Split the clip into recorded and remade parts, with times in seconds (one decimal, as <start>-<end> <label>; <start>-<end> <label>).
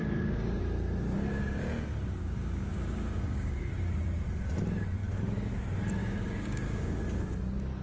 0.0-0.6 remade; 0.6-2.2 recorded; 2.2-3.7 remade; 3.7-6.0 recorded; 6.0-7.0 remade; 7.0-7.8 recorded